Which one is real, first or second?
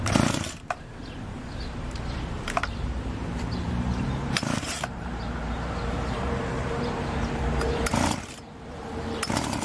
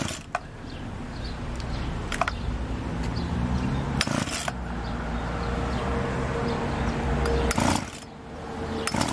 second